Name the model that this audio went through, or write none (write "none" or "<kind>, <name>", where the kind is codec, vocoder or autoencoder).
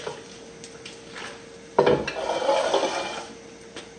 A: none